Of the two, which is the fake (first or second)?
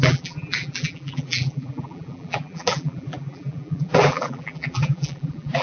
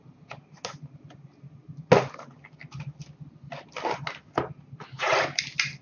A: first